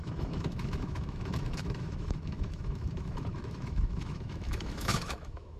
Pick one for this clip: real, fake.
fake